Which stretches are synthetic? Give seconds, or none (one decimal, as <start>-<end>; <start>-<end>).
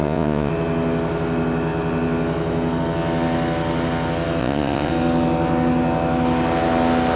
0.0-0.5; 4.4-4.9